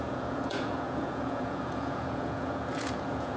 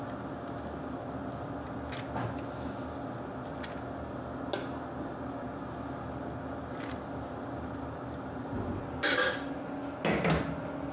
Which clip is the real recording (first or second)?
second